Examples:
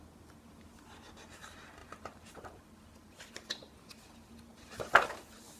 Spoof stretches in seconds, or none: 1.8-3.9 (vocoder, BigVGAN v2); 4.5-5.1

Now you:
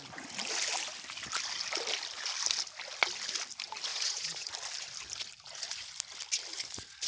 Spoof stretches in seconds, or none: 3.9-4.5 (vocoder, Vocos)